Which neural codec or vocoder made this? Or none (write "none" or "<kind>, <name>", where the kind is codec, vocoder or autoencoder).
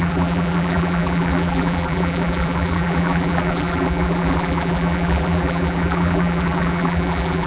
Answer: vocoder, BigVGAN v2